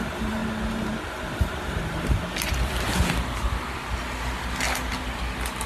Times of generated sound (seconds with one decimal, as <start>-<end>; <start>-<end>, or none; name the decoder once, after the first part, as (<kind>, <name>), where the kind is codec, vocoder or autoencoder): 0.0-0.4 (vocoder, BigVGAN v2); 1.3-2.2